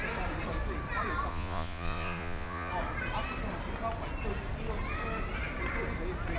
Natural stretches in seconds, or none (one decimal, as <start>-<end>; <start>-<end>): 0.0-1.3; 2.7-6.4